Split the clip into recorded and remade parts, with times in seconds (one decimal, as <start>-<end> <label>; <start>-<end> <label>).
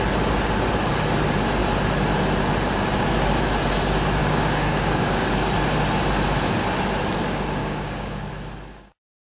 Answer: 0.0-4.2 recorded; 4.2-5.3 remade; 5.3-7.6 recorded; 7.6-8.3 remade; 8.3-9.3 recorded